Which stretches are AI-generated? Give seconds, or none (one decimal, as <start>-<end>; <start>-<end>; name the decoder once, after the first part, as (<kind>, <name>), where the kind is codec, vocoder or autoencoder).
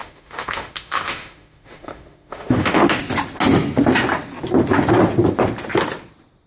0.0-3.0 (autoencoder, DAC-VAE)